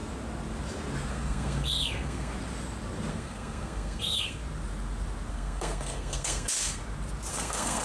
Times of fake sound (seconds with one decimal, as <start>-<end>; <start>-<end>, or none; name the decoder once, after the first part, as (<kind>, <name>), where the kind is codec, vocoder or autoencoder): 1.1-2.3 (codec, SNAC); 3.1-4.4; 5.3-6.8; 7.3-7.8

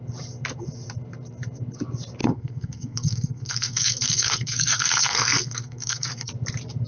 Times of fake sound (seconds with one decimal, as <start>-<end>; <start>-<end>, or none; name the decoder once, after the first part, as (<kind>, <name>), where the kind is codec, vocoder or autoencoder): 2.2-6.3 (codec, SNAC)

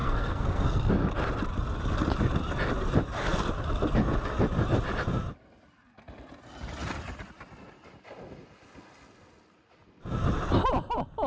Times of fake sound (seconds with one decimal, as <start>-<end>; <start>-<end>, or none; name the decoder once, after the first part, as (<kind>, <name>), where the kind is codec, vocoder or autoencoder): 0.0-0.9 (codec, SNAC)

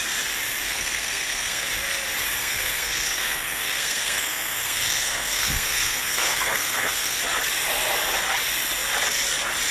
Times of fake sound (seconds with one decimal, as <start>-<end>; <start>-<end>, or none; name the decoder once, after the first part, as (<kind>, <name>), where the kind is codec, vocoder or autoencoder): 0.7-1.7 (codec, SNAC); 2.4-7.2

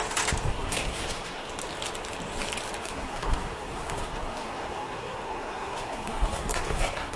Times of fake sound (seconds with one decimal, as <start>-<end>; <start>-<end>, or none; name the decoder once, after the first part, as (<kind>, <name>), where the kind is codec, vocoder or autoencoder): 0.5-1.5 (codec, SNAC); 2.8-7.2

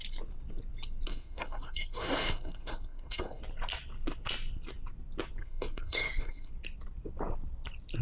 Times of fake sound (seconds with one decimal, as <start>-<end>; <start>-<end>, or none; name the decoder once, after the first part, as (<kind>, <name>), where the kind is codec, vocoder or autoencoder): 1.1-3.4 (codec, SNAC); 5.4-6.5